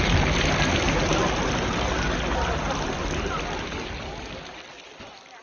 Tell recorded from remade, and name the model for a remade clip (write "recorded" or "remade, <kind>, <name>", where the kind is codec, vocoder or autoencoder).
recorded